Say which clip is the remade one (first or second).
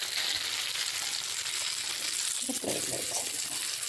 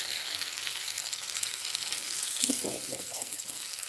second